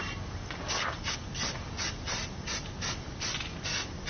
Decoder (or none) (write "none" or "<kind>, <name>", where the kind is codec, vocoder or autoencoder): none